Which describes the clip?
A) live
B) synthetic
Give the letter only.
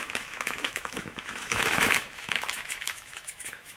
B